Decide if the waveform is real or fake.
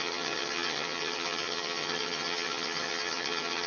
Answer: fake